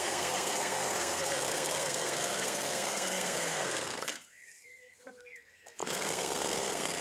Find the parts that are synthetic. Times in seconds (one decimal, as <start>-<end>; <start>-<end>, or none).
0.0-7.0